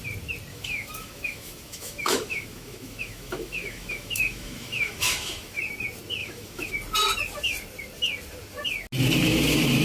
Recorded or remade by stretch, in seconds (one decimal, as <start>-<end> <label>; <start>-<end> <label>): 0.0-0.5 recorded; 0.5-5.6 remade; 5.6-6.2 recorded; 6.2-6.7 remade; 6.7-9.8 recorded